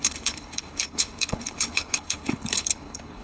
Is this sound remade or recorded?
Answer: remade